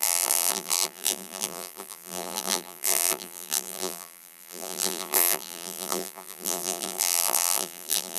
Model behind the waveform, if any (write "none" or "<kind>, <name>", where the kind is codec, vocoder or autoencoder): vocoder, BigVGAN v2